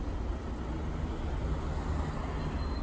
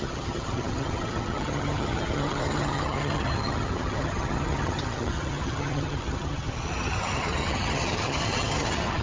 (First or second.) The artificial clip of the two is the second